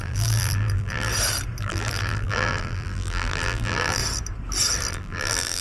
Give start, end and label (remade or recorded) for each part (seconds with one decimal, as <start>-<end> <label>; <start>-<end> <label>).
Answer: 0.0-1.1 remade; 1.1-1.6 recorded; 1.6-4.0 remade; 4.0-4.9 recorded; 4.9-5.6 remade

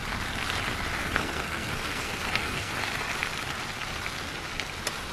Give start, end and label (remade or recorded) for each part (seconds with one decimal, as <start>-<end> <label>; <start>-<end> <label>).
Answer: 0.0-1.0 recorded; 1.0-2.7 remade; 2.7-5.1 recorded